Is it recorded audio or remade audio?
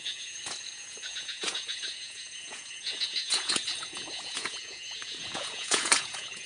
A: remade